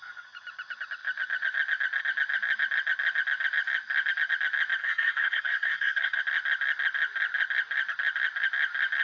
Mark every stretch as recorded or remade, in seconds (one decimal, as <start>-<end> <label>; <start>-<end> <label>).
0.0-4.8 recorded; 4.8-6.2 remade; 6.2-9.0 recorded

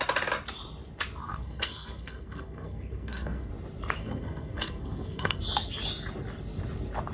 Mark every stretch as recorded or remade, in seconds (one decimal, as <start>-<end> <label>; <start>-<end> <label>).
0.0-1.2 recorded; 1.2-3.5 remade; 3.5-4.0 recorded; 4.0-5.4 remade; 5.4-7.1 recorded

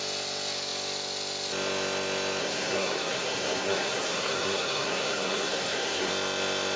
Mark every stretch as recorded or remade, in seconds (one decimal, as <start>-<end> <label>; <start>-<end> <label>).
0.0-2.4 recorded; 2.4-6.1 remade; 6.1-6.8 recorded

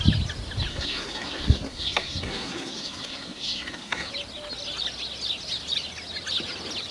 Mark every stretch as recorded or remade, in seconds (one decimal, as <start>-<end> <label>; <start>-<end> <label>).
0.0-0.7 recorded; 0.7-4.1 remade; 4.1-6.9 recorded

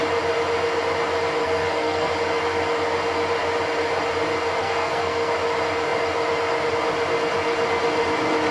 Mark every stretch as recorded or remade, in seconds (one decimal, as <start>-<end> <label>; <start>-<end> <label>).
0.0-1.4 recorded; 1.4-2.1 remade; 2.1-4.6 recorded; 4.6-5.3 remade; 5.3-8.5 recorded

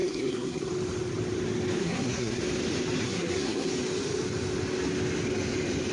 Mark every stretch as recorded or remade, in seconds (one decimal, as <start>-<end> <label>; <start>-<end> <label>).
0.0-0.7 remade; 0.7-1.8 recorded; 1.8-2.4 remade; 2.4-3.0 recorded; 3.0-3.7 remade; 3.7-5.9 recorded

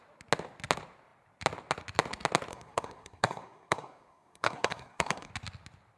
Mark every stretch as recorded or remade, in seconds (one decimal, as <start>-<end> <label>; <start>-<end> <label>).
0.0-2.5 recorded; 2.5-5.3 remade; 5.3-6.0 recorded

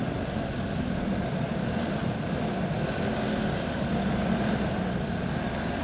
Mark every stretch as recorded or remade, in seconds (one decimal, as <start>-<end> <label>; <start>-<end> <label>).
0.0-5.8 recorded